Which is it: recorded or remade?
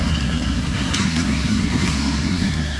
remade